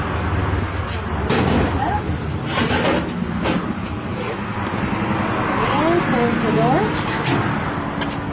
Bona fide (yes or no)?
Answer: yes